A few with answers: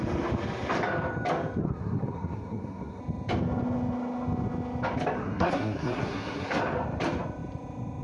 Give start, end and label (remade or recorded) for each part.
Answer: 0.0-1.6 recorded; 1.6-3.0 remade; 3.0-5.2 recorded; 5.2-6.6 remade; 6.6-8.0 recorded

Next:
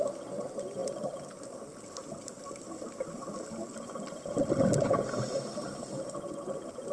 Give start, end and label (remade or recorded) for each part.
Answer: 0.0-6.9 recorded

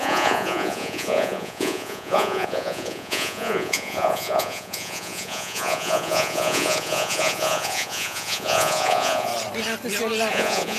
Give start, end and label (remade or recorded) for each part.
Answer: 0.0-9.3 remade; 9.3-10.3 recorded; 10.3-10.8 remade

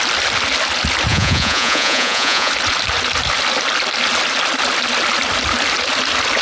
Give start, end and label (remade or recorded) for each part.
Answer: 0.0-1.1 recorded; 1.1-2.5 remade; 2.5-6.4 recorded

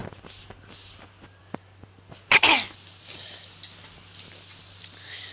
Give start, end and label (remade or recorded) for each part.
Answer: 0.0-5.3 recorded

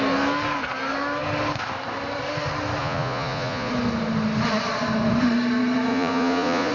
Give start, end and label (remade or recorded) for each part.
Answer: 0.0-2.8 recorded; 2.8-3.7 remade; 3.7-5.9 recorded; 5.9-6.7 remade

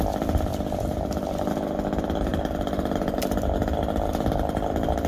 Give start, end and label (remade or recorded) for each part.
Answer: 0.0-0.5 recorded; 0.5-1.5 remade; 1.5-2.3 recorded; 2.3-3.2 remade; 3.2-5.1 recorded